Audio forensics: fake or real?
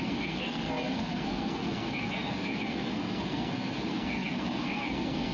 fake